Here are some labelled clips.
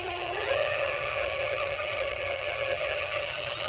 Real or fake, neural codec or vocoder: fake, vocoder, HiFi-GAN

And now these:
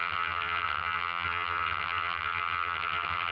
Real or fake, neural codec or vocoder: fake, vocoder, HiFi-GAN